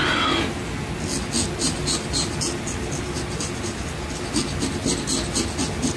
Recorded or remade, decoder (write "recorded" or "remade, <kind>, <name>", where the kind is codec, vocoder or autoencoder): recorded